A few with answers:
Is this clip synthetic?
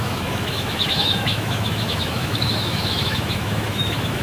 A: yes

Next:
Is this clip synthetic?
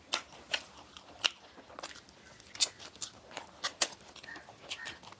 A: no